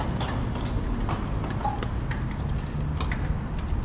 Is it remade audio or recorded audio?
recorded